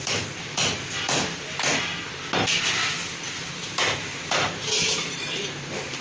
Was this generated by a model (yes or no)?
no